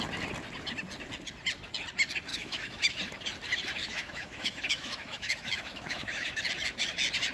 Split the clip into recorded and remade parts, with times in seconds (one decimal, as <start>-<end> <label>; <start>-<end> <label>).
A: 0.0-2.3 recorded; 2.3-2.9 remade; 2.9-3.8 recorded; 3.8-6.4 remade; 6.4-7.3 recorded